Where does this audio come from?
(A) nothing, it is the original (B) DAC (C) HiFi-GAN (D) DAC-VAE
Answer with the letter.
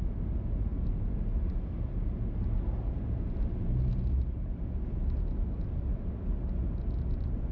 A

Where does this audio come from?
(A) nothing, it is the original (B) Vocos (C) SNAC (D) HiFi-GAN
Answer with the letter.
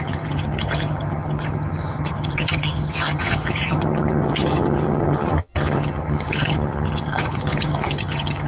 D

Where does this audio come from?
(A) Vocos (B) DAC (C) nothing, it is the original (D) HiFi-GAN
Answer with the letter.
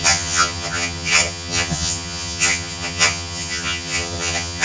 D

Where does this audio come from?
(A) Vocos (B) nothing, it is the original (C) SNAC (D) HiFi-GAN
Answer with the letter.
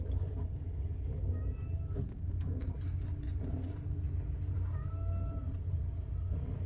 B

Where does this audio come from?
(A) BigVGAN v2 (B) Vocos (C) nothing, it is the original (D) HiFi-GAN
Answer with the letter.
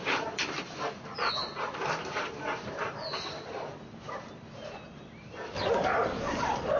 C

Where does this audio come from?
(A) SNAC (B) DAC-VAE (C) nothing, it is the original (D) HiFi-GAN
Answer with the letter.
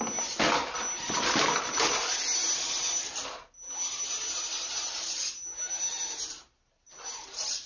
C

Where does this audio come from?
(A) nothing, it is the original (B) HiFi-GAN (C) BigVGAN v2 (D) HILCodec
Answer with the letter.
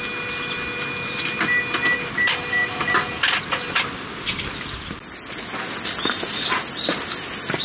A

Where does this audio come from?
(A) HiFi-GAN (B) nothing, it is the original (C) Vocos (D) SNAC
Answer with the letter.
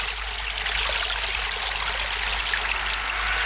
B